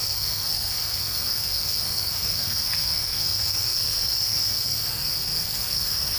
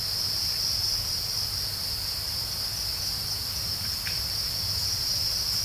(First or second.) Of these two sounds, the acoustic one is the second